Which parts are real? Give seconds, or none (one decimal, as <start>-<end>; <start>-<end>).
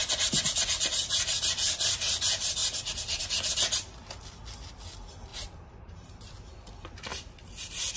0.0-5.3; 6.1-8.0